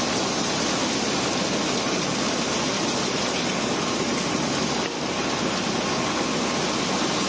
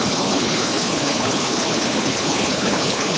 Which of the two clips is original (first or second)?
first